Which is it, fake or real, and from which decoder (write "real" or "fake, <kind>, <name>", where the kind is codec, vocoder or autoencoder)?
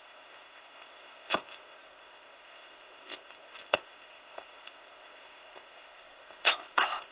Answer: fake, codec, ZipCodec